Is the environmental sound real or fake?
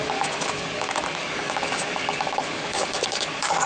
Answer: fake